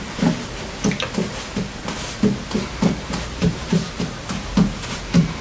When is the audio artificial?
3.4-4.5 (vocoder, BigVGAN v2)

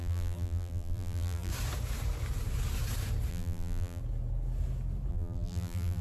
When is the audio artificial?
0.0-1.5 (vocoder, BigVGAN v2); 3.3-4.0; 5.1-6.0

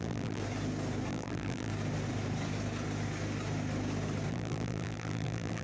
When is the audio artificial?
0.0-0.4 (vocoder, BigVGAN v2); 1.1-1.7; 4.3-5.6

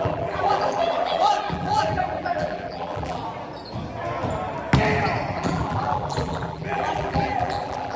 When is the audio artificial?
0.0-3.2 (vocoder, BigVGAN v2); 5.3-8.0

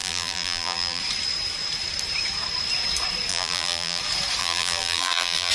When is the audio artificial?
0.0-1.0 (vocoder, BigVGAN v2); 3.3-4.0; 4.4-5.5

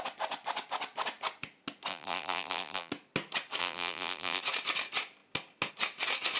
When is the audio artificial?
1.9-2.9 (vocoder, BigVGAN v2); 3.6-4.4

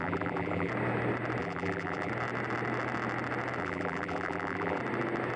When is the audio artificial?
0.0-0.7 (vocoder, BigVGAN v2); 1.4-2.1; 3.6-4.8